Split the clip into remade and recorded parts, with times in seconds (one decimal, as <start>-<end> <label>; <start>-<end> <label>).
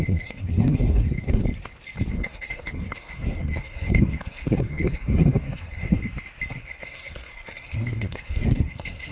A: 0.0-1.4 remade; 1.4-2.1 recorded; 2.1-6.0 remade; 6.0-6.5 recorded; 6.5-9.1 remade